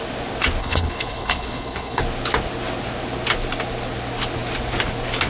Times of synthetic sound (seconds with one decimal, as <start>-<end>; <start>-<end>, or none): 0.6-2.0